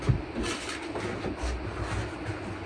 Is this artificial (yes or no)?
no